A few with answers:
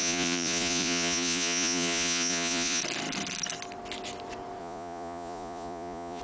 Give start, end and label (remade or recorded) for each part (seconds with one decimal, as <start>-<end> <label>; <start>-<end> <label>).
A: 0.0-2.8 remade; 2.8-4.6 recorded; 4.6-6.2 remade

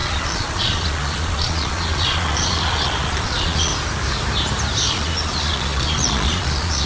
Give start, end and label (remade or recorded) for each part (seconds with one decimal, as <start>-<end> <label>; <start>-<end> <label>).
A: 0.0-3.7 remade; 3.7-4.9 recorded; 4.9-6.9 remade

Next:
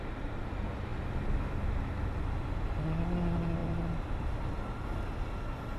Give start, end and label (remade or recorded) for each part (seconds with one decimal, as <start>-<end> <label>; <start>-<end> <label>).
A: 0.0-5.8 recorded

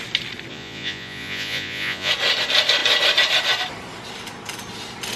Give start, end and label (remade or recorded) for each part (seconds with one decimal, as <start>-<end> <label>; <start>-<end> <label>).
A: 0.0-0.5 recorded; 0.5-2.1 remade; 2.1-5.2 recorded

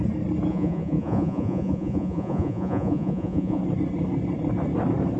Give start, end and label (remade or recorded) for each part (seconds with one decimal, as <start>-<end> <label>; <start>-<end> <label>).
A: 0.0-0.5 recorded; 0.5-3.6 remade; 3.6-5.2 recorded